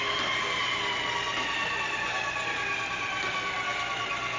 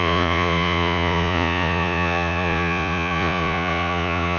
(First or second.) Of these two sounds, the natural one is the first